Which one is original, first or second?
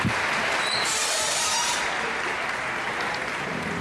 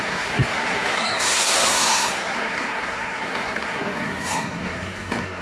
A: first